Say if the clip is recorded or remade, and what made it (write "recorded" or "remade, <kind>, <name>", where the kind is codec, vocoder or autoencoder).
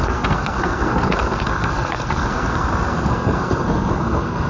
remade, codec, SNAC